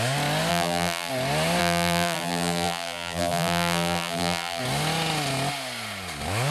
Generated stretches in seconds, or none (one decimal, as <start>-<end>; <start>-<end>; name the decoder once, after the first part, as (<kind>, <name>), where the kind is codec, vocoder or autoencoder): 0.5-1.1 (vocoder, BigVGAN v2); 1.6-4.6